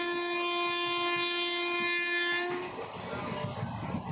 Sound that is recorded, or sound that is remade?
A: recorded